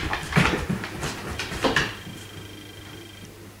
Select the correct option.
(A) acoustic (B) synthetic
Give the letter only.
A